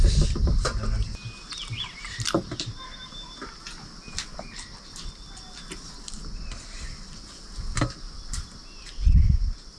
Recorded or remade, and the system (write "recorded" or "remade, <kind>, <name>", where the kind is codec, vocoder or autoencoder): recorded